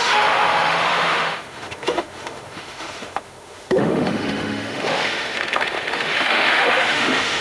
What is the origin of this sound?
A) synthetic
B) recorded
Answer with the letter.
A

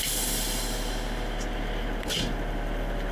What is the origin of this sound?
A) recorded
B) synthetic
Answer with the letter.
A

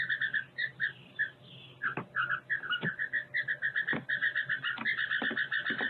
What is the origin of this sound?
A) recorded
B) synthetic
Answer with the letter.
A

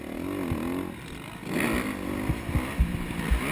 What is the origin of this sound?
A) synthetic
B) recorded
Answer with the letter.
B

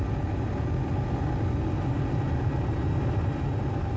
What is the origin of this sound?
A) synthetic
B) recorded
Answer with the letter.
B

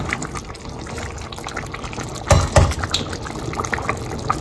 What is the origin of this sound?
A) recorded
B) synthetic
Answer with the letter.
A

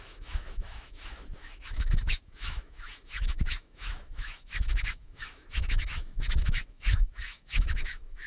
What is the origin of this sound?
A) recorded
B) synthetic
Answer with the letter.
B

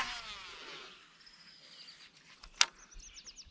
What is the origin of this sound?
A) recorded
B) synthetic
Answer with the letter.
A